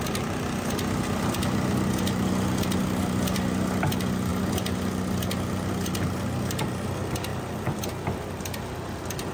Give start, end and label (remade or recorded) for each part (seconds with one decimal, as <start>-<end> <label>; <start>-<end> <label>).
0.0-9.3 recorded